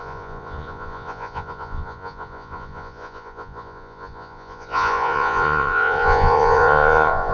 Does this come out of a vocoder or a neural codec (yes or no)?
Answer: yes